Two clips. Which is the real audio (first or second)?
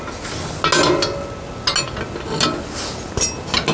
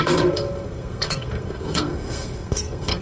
first